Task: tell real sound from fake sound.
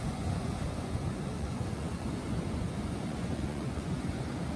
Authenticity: fake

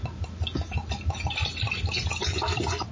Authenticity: real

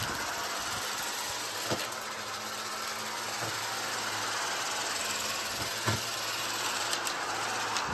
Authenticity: real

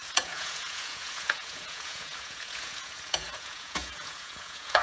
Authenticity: fake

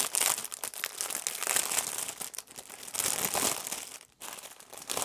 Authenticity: real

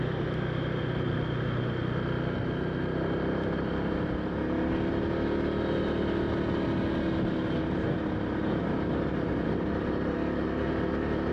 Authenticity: real